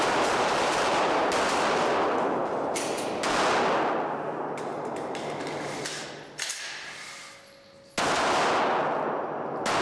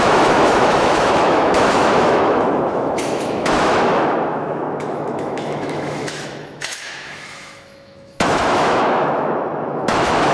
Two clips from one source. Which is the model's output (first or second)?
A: second